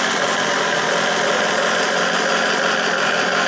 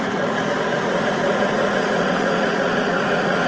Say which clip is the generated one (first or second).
second